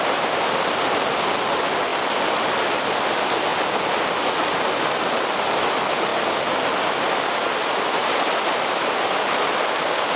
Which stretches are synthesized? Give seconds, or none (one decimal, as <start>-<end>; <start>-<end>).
none